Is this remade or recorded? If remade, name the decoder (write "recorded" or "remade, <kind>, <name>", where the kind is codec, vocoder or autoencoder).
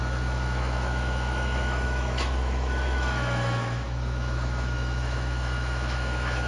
remade, autoencoder, DAC-VAE